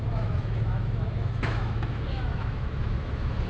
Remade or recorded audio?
remade